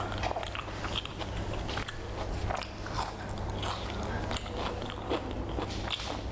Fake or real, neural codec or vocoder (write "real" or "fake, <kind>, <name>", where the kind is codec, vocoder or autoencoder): real